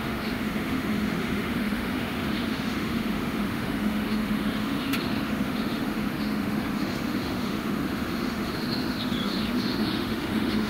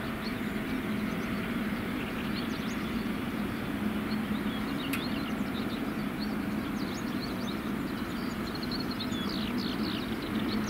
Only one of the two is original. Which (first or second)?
second